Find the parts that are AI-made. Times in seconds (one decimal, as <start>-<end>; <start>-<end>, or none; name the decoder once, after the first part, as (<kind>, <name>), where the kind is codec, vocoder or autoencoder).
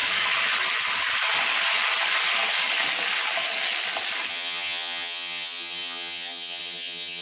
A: 4.3-7.2 (vocoder, HiFi-GAN)